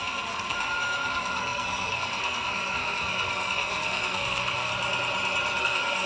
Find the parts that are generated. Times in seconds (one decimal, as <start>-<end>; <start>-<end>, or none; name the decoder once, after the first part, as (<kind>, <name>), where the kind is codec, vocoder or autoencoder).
0.0-4.7 (codec, SNAC); 5.6-6.1